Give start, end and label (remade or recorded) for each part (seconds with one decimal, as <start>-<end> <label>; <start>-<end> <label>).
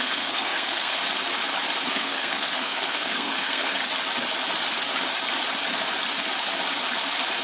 0.0-1.0 remade; 1.0-1.9 recorded; 1.9-3.8 remade; 3.8-7.4 recorded